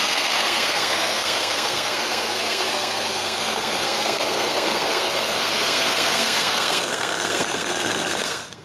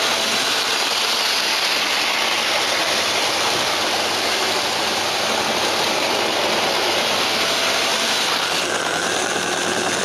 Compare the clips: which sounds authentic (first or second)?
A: second